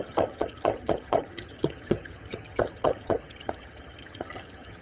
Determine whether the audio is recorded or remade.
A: remade